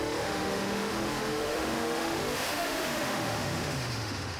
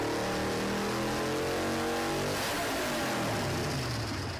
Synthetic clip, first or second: first